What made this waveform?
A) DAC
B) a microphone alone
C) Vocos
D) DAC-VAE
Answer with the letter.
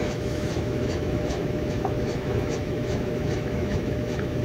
D